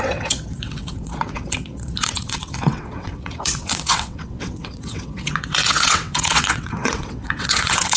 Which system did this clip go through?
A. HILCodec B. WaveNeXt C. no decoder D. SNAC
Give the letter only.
B